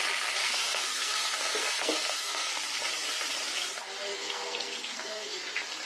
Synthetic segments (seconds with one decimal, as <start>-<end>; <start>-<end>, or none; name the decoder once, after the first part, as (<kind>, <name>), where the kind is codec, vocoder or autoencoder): 0.4-2.6 (codec, SNAC); 4.1-5.4